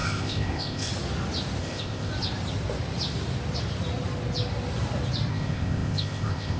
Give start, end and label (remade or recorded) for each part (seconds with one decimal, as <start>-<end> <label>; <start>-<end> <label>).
0.0-0.9 remade; 0.9-1.6 recorded; 1.6-2.1 remade; 2.1-5.3 recorded; 5.3-6.6 remade